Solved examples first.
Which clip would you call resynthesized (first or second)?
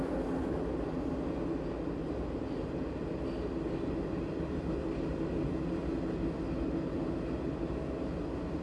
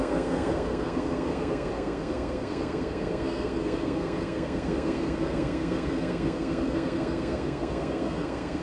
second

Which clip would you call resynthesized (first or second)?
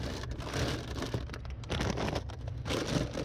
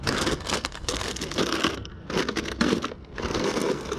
second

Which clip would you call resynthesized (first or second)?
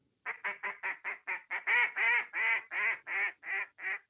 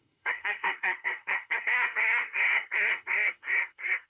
second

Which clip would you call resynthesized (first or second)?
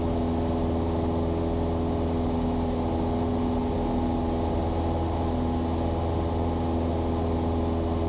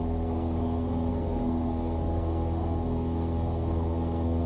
second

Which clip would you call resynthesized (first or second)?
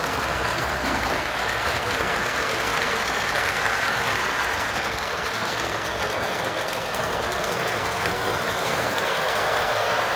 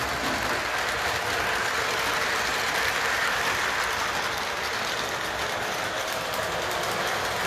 first